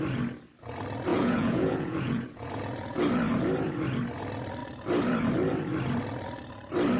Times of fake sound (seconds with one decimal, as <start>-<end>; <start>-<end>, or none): 1.1-3.0